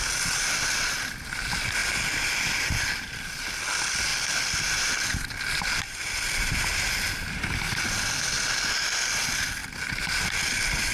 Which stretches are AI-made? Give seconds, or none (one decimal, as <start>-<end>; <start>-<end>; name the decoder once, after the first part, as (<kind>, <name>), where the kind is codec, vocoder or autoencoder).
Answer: 1.8-3.6 (vocoder, BigVGAN v2); 4.1-6.9